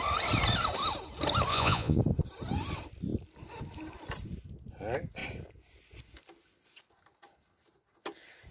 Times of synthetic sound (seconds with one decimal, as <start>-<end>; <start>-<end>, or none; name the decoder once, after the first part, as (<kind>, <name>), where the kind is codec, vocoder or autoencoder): 1.5-2.0 (vocoder, Vocos)